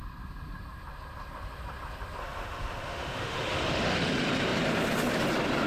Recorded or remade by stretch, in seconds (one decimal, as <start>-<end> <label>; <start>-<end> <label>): 0.0-2.2 recorded; 2.2-4.1 remade; 4.1-5.7 recorded